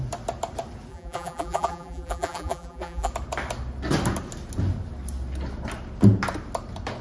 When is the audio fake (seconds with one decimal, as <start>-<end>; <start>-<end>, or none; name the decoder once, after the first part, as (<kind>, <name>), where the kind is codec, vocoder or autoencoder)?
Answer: 0.9-3.1 (vocoder, BigVGAN v2)